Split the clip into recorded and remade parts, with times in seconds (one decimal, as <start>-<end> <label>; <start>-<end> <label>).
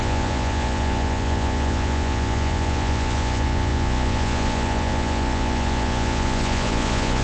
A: 0.0-7.2 remade